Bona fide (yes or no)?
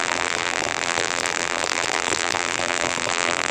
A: no